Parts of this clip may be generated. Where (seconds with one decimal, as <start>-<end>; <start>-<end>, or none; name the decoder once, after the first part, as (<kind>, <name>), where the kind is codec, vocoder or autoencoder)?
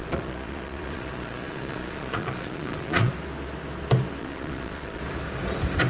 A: 0.0-3.1 (vocoder, Vocos); 4.2-5.0